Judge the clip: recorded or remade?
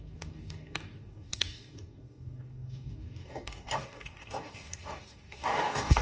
remade